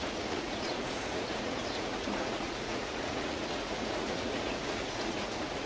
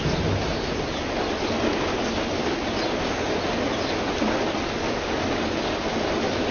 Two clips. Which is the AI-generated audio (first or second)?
first